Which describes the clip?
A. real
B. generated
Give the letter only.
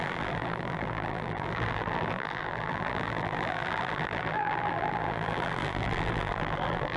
B